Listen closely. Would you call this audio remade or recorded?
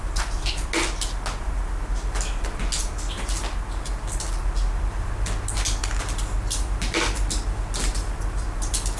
recorded